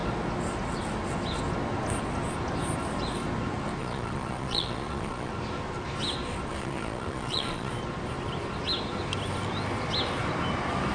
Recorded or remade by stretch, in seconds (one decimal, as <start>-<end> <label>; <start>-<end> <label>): 0.0-3.8 recorded; 3.8-5.3 remade; 5.3-6.5 recorded; 6.5-7.7 remade; 7.7-10.9 recorded